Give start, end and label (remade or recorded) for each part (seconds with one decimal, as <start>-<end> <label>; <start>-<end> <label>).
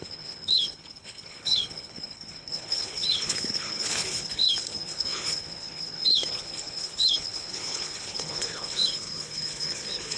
0.0-10.2 remade